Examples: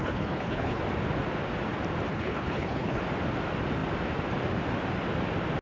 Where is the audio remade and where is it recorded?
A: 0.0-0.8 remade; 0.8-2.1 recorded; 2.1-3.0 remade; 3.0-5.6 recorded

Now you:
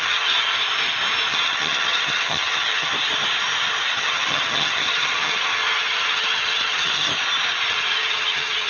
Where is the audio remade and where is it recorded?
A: 0.0-0.5 remade; 0.5-1.3 recorded; 1.3-2.9 remade; 2.9-4.0 recorded; 4.0-7.1 remade; 7.1-7.7 recorded; 7.7-8.7 remade

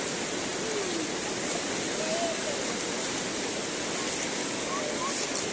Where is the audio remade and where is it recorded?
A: 0.0-4.4 recorded; 4.4-4.9 remade; 4.9-5.5 recorded

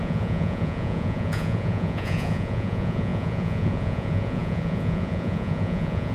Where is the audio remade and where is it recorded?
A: 0.0-6.1 remade

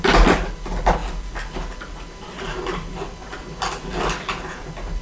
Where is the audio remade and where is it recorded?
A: 0.0-5.0 recorded

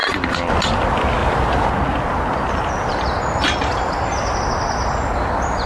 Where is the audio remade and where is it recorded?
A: 0.0-5.7 recorded

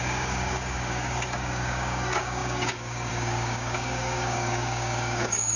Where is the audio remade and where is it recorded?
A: 0.0-5.6 remade